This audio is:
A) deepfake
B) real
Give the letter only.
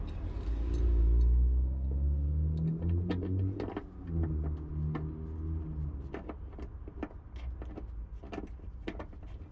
B